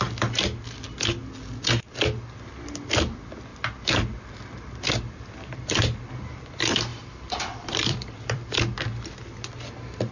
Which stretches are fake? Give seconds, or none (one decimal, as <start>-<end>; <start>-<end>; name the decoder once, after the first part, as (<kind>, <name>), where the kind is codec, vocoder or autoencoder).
6.9-8.6 (vocoder, BigVGAN v2)